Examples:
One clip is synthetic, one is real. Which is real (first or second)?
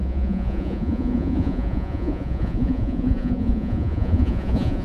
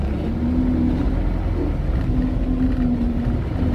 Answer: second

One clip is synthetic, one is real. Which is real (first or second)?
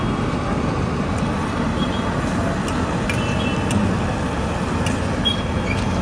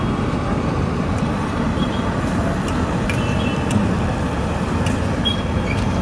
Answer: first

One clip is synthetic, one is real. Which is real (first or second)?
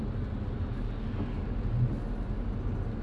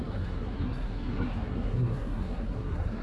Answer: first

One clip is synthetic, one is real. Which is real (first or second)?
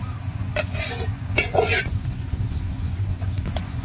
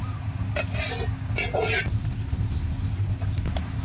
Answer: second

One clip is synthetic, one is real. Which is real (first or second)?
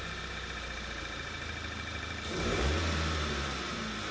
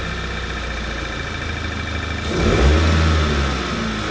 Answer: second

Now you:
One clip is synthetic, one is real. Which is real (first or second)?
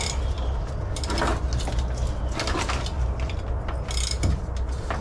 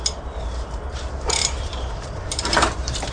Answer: first